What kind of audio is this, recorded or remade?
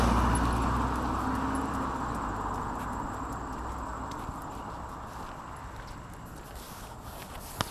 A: recorded